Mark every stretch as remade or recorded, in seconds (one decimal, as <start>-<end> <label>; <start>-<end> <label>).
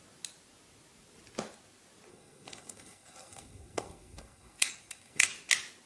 0.0-2.1 recorded; 2.1-5.3 remade; 5.3-5.9 recorded